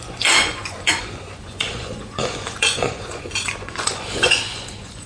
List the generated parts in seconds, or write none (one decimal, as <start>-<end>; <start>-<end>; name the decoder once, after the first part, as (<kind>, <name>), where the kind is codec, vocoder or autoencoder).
0.0-5.1 (vocoder, Vocos)